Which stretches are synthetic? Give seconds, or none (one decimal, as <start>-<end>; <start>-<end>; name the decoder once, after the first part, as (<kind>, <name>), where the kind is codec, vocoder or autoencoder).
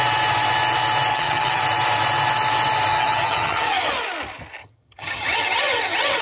1.1-1.6 (vocoder, HiFi-GAN); 2.9-3.9; 4.6-6.2